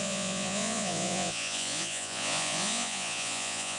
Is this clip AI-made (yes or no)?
yes